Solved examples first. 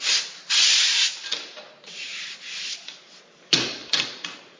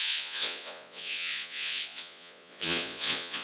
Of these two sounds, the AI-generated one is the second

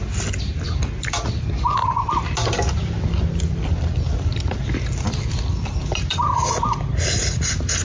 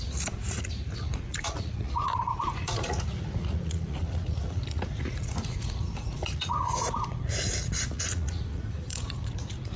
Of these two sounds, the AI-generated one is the second